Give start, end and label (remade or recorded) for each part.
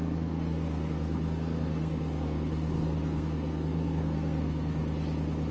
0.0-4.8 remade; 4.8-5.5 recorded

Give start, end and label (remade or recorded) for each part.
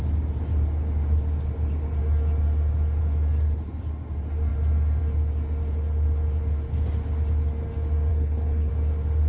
0.0-8.1 recorded; 8.1-8.7 remade; 8.7-9.3 recorded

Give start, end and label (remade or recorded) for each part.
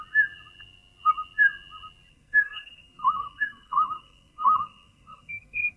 0.0-2.1 recorded; 2.1-5.8 remade